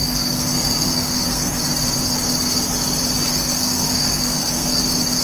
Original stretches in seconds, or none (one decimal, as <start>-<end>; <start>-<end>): 1.6-3.3; 4.8-5.2